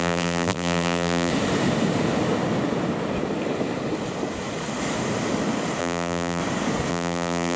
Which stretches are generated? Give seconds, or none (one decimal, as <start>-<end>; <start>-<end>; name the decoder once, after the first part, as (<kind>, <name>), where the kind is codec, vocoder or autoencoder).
0.0-1.3 (vocoder, BigVGAN v2); 5.8-6.4; 6.9-7.6